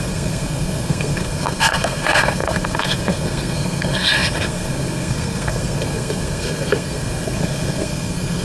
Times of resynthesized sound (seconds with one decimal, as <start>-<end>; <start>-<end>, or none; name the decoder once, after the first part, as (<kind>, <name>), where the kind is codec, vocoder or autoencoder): 0.0-8.4 (codec, SNAC)